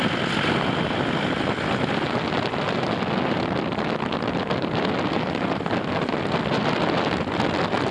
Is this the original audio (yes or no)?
yes